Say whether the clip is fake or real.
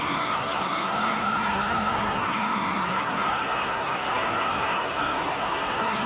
fake